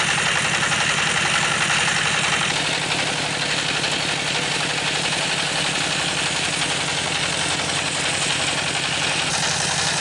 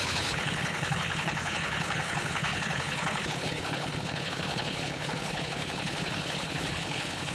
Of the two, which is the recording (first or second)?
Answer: first